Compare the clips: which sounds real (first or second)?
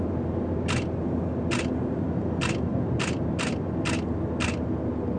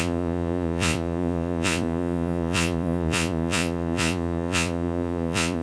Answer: first